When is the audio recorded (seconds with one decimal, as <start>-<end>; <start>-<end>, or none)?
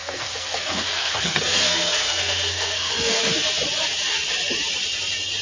3.2-5.4